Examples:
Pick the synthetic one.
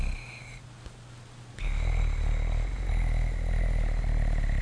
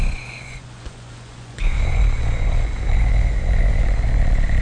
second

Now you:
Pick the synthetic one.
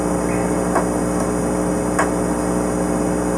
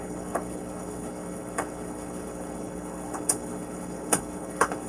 second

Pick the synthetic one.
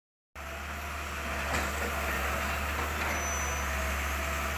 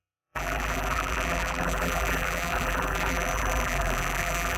second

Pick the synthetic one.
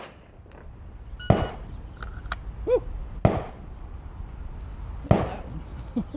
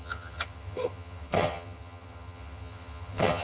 second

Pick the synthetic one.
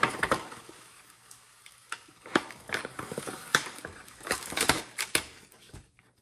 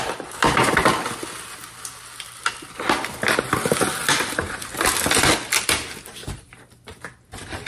first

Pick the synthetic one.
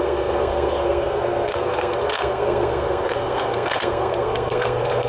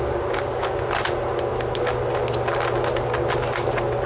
first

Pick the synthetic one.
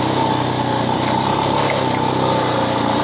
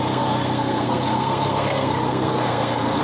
second